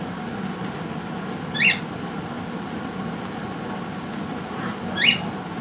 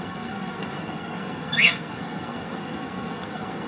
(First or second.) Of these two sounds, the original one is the first